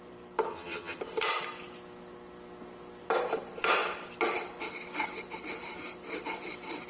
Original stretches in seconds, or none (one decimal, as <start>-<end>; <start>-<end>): 0.0-0.5; 1.0-6.9